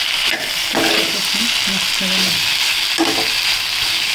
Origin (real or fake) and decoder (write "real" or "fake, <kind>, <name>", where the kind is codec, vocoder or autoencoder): real